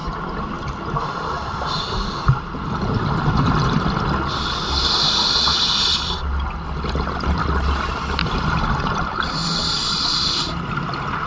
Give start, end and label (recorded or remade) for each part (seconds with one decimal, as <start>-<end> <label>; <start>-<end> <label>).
0.0-11.3 recorded